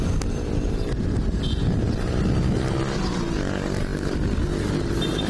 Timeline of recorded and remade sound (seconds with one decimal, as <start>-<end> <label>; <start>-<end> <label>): 0.0-5.3 recorded